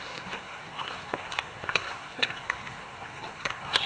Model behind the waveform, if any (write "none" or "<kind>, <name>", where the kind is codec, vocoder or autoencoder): codec, SNAC